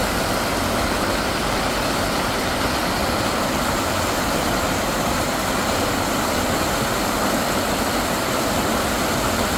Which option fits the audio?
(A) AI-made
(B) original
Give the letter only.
B